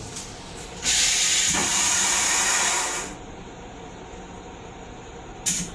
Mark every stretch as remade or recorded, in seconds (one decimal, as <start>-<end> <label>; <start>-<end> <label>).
0.0-5.7 remade